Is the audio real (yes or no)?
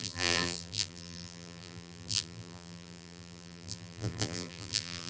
no